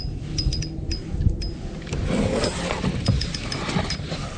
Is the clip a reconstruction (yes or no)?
no